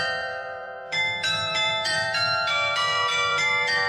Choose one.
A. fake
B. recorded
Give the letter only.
A